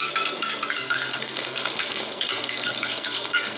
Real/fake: fake